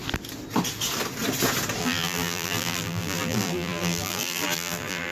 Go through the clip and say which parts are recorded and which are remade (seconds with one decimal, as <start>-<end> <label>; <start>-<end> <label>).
0.0-1.8 recorded; 1.8-5.1 remade

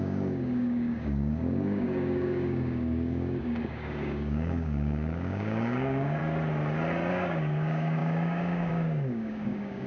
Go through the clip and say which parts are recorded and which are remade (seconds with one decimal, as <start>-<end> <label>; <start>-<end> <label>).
0.0-6.2 remade; 6.2-7.1 recorded; 7.1-9.9 remade

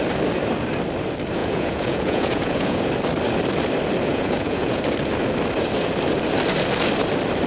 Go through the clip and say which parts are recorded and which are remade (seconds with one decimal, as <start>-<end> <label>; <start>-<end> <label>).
0.0-1.4 recorded; 1.4-2.8 remade; 2.8-4.1 recorded; 4.1-4.8 remade; 4.8-7.5 recorded

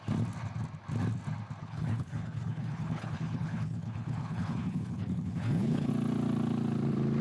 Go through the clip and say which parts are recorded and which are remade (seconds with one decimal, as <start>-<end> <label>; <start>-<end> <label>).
0.0-1.6 recorded; 1.6-5.9 remade; 5.9-7.2 recorded

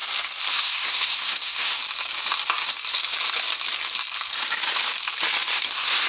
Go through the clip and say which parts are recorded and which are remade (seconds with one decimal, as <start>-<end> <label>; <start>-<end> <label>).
0.0-0.5 recorded; 0.5-1.8 remade; 1.8-5.5 recorded; 5.5-6.1 remade

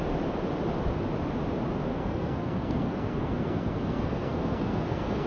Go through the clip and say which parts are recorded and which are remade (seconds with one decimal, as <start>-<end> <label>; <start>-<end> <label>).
0.0-1.9 recorded; 1.9-5.3 remade

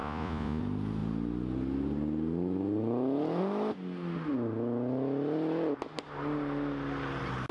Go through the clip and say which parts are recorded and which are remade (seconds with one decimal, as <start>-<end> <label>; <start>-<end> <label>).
0.0-0.6 remade; 0.6-7.5 recorded

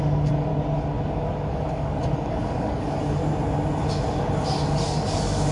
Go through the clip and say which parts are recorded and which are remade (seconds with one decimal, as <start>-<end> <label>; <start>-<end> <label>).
0.0-0.5 remade; 0.5-1.5 recorded; 1.5-3.2 remade; 3.2-4.8 recorded; 4.8-5.5 remade